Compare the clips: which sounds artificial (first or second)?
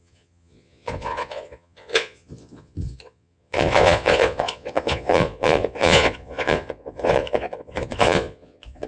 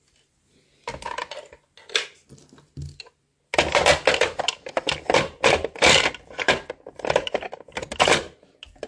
first